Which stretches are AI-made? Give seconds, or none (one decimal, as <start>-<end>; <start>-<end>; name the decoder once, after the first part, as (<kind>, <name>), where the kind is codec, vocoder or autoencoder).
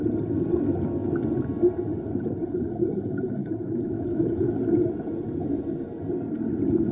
3.4-4.5 (autoencoder, DAC-VAE)